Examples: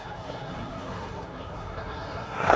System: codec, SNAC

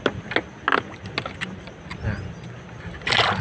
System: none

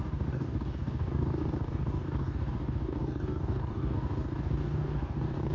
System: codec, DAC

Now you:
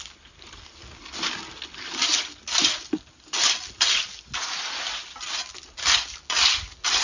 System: none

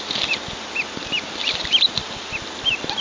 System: none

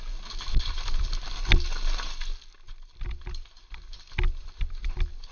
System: none